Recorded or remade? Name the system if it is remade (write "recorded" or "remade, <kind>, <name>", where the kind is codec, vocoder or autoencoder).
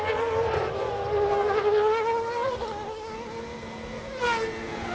recorded